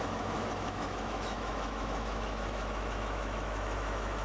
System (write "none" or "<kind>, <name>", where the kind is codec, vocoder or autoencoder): autoencoder, DAC-VAE